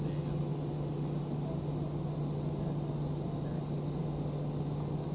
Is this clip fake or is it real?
real